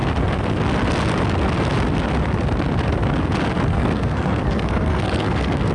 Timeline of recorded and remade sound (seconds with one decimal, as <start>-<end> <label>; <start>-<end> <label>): 0.0-3.7 recorded; 3.7-5.7 remade